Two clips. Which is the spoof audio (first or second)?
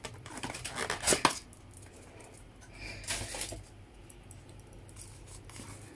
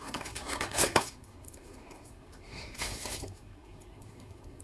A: second